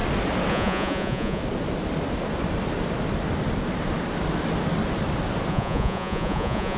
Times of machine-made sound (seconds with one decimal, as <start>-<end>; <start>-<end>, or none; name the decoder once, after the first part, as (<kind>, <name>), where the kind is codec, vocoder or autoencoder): 0.5-1.4 (vocoder, Vocos); 5.5-6.8